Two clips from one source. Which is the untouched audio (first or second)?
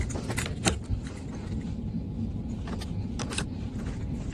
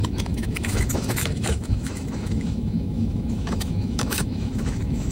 first